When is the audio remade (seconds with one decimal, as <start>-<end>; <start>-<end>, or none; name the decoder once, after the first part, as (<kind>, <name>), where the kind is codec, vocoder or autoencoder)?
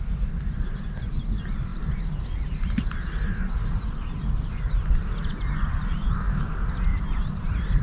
6.9-7.8 (vocoder, BigVGAN v2)